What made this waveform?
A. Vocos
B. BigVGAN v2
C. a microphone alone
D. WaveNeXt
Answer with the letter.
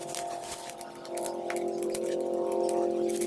C